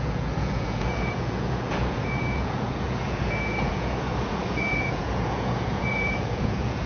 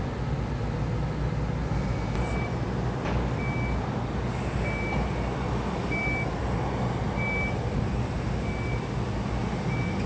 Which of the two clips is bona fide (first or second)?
second